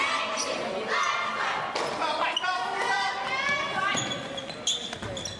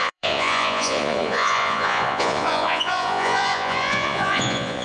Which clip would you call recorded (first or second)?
first